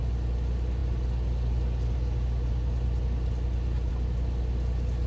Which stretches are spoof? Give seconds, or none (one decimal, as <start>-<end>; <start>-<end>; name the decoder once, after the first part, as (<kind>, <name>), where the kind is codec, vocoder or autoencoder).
none